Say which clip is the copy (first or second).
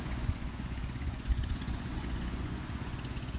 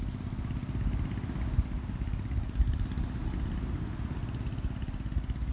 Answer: first